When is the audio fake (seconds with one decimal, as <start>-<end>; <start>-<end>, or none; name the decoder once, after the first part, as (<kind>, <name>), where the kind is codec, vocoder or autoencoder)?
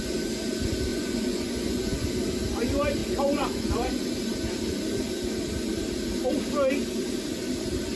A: 0.9-2.1 (vocoder, Vocos); 3.0-4.1